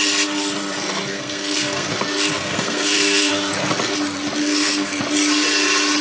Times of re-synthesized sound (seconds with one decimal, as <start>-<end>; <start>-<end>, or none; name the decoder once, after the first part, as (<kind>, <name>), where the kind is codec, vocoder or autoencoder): 1.1-1.9 (codec, SNAC); 2.3-3.3; 4.4-5.0